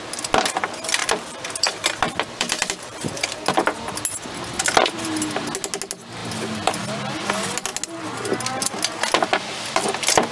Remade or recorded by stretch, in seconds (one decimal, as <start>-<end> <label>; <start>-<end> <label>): 0.0-1.0 recorded; 1.0-3.2 remade; 3.2-6.2 recorded; 6.2-6.7 remade; 6.7-10.3 recorded